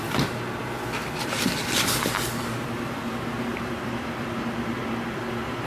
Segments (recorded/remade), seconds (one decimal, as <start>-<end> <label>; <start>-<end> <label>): 0.0-3.5 recorded; 3.5-5.2 remade; 5.2-5.7 recorded